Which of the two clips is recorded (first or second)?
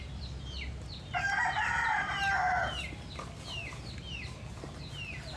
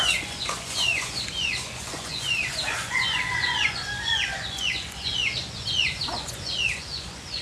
first